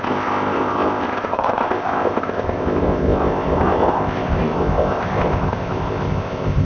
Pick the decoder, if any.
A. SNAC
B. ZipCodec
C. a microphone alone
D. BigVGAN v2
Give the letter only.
B